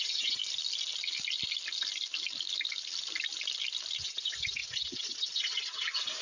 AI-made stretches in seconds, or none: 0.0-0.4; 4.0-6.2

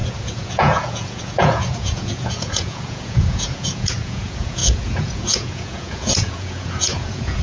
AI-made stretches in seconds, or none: 0.0-7.4